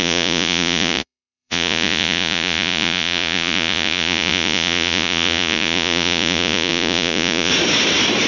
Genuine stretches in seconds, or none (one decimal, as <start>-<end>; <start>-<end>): 7.5-8.3

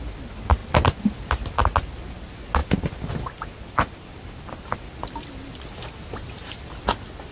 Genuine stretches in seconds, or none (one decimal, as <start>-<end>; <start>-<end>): 0.0-7.3